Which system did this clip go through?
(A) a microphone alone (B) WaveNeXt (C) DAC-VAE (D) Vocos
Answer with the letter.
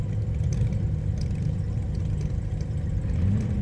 A